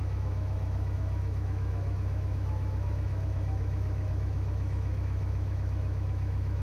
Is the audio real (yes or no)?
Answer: no